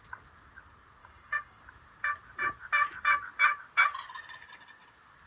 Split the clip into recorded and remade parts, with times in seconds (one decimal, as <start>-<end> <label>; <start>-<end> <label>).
0.0-1.0 recorded; 1.0-1.6 remade; 1.6-5.3 recorded